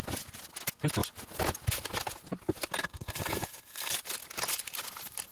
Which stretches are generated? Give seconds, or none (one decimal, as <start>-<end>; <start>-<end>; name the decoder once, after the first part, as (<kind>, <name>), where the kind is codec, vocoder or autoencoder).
2.8-3.9 (codec, SNAC)